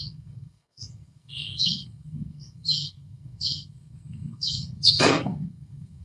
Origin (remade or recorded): remade